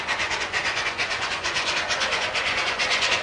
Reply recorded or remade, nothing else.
remade